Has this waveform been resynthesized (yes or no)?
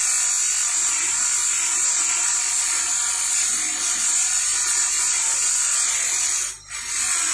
no